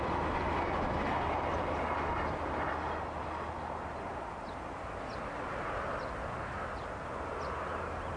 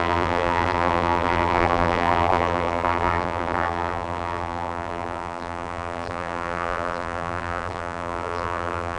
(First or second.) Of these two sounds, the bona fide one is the first